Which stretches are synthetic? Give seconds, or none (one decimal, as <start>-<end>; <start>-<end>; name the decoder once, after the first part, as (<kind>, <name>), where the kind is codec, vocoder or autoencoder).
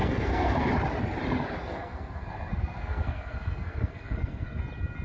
0.0-0.7 (codec, SNAC); 1.6-4.6